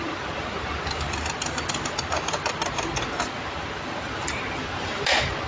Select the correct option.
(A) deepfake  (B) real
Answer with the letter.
B